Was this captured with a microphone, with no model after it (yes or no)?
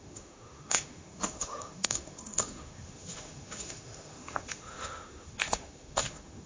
no